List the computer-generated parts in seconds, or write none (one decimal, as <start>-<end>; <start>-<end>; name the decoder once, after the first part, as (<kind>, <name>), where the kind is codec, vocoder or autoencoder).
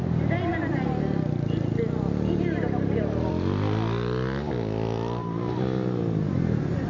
none